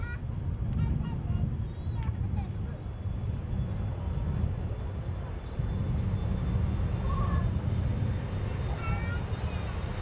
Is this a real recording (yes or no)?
yes